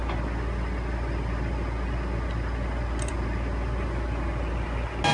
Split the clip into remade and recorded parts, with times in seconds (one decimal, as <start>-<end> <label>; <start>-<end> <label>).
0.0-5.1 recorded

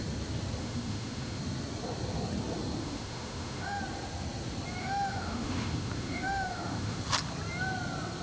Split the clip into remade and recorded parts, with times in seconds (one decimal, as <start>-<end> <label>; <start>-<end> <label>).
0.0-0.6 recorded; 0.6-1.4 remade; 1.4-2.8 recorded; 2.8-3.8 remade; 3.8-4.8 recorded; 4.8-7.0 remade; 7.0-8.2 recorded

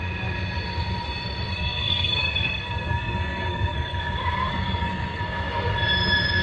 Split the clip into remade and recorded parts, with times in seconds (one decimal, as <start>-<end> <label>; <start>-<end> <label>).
0.0-1.5 recorded; 1.5-4.0 remade; 4.0-4.5 recorded; 4.5-5.2 remade; 5.2-6.4 recorded

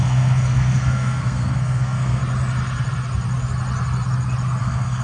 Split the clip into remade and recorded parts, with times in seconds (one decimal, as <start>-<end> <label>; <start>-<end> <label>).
0.0-2.2 remade; 2.2-4.6 recorded; 4.6-5.0 remade